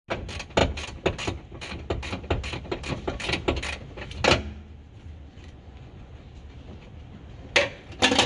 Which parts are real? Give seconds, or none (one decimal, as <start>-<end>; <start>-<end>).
0.0-5.3; 6.1-8.3